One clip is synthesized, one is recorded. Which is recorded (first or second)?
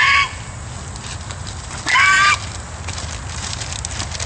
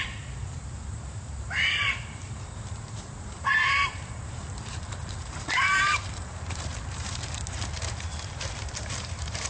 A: first